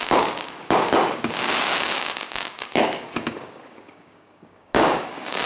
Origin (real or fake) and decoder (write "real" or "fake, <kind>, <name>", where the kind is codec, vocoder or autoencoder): fake, codec, DAC